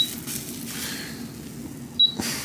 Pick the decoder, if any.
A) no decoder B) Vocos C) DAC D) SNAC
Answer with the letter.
A